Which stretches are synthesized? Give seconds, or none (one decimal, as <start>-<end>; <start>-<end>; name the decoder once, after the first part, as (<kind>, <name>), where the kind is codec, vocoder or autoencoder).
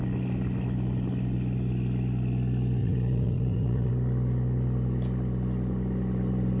2.8-3.9 (vocoder, Vocos)